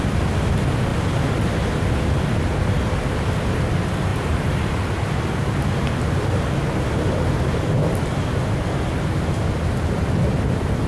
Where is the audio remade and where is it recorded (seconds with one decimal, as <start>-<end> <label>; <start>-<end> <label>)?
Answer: 0.0-4.1 recorded; 4.1-5.2 remade; 5.2-10.9 recorded